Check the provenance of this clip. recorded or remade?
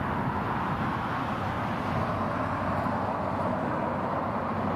recorded